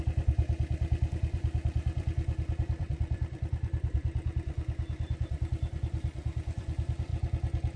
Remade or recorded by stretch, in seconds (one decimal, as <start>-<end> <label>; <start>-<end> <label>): 0.0-7.1 remade; 7.1-7.8 recorded